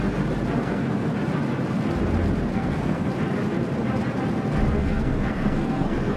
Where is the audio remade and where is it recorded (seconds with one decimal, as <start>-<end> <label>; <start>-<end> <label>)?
0.0-0.6 recorded; 0.6-1.1 remade; 1.1-2.5 recorded; 2.5-3.1 remade; 3.1-4.8 recorded; 4.8-6.2 remade